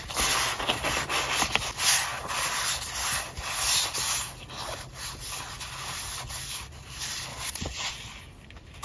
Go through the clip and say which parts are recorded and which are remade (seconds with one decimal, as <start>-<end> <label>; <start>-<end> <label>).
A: 0.0-7.3 recorded; 7.3-8.2 remade; 8.2-8.8 recorded